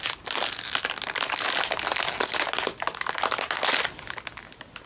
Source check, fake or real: real